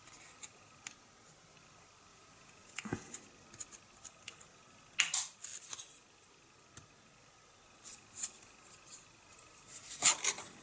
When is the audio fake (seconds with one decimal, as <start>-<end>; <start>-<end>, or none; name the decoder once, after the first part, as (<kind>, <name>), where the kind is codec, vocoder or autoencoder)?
2.1-3.1 (vocoder, Vocos)